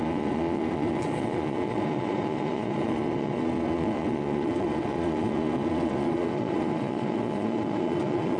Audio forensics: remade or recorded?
remade